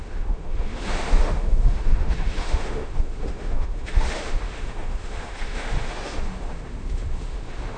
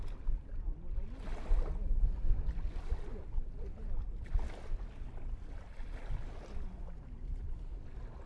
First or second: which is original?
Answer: second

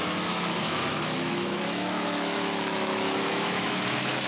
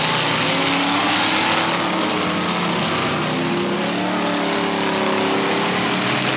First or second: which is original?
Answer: second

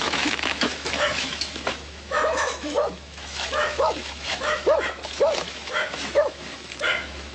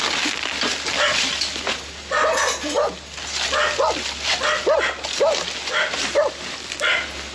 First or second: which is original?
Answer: second